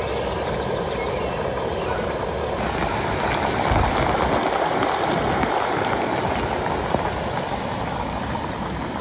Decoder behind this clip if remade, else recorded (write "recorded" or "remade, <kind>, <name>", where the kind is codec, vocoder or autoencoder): recorded